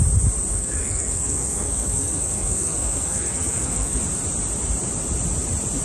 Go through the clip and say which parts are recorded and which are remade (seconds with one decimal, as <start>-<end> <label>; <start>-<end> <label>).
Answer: 0.0-0.5 recorded; 0.5-4.0 remade; 4.0-5.8 recorded